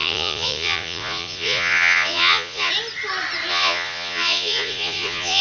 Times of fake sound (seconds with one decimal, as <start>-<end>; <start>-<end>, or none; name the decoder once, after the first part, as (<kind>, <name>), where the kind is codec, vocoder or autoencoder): 0.0-2.7 (vocoder, Vocos); 3.5-5.4